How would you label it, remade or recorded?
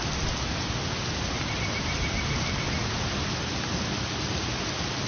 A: recorded